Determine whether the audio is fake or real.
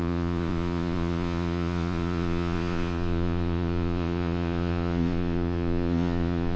fake